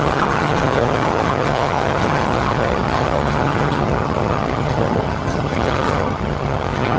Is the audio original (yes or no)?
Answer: no